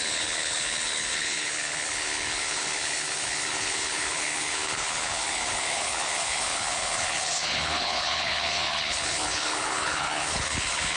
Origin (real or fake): fake